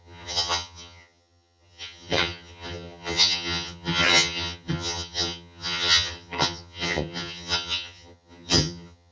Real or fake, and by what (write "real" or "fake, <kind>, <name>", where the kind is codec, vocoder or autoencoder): fake, vocoder, HiFi-GAN